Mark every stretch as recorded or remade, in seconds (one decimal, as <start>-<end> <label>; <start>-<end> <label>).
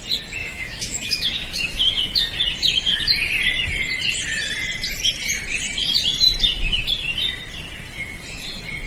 0.0-0.4 recorded; 0.4-2.2 remade; 2.2-8.9 recorded